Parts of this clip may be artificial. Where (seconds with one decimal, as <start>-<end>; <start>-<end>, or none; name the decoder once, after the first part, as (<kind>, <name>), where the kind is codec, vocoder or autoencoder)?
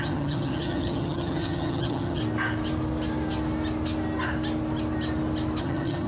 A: 0.0-2.2 (vocoder, HiFi-GAN); 5.6-6.1